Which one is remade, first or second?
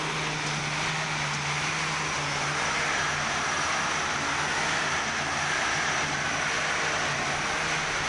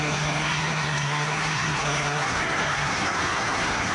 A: second